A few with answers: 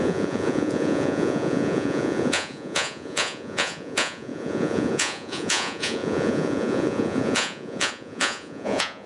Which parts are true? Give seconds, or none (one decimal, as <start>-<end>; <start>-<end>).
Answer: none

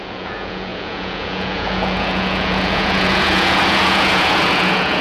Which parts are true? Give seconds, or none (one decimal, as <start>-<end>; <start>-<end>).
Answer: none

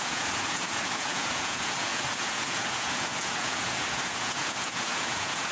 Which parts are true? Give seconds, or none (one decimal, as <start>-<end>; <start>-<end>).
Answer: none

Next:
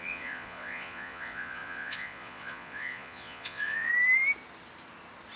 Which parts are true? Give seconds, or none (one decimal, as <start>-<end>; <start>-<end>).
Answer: 3.9-5.4

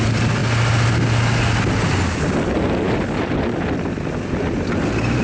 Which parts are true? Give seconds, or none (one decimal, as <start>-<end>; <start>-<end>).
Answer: 0.0-5.2

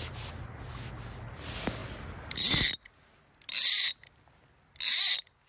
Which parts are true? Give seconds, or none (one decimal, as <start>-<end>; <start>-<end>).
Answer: 0.0-5.5